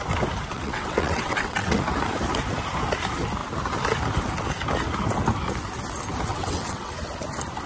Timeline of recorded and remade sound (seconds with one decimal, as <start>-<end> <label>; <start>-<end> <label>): 0.0-0.5 recorded; 0.5-1.8 remade; 1.8-6.3 recorded; 6.3-6.9 remade; 6.9-7.7 recorded